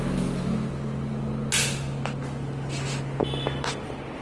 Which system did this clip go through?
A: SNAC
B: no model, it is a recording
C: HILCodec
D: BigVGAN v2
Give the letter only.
B